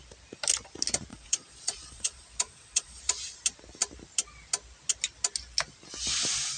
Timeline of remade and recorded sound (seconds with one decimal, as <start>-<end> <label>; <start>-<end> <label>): 0.0-1.1 recorded; 1.1-3.0 remade; 3.0-6.6 recorded